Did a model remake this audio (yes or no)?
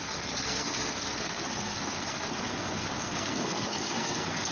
yes